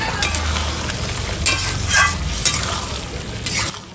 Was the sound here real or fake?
real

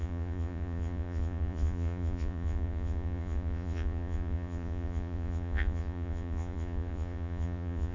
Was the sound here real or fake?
fake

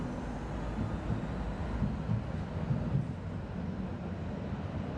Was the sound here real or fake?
real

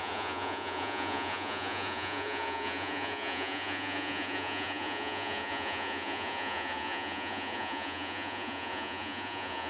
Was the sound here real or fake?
fake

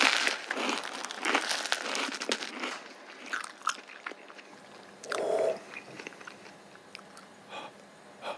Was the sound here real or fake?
real